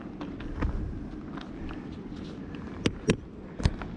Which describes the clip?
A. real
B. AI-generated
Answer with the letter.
A